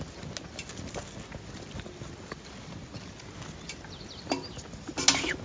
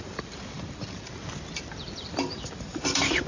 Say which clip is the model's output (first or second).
second